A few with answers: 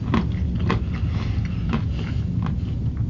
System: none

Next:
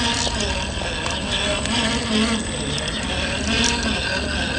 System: none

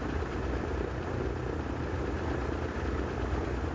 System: none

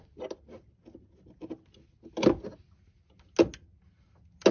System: none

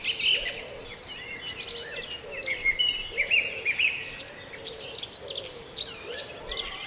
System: none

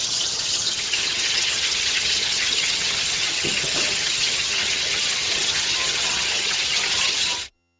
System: vocoder, HiFi-GAN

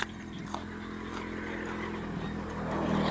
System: none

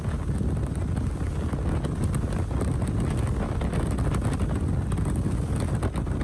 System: none